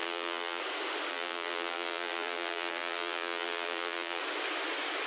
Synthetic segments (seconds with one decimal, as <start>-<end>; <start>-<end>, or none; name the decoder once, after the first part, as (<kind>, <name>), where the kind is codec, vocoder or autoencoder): 0.0-0.6 (vocoder, BigVGAN v2); 1.1-4.2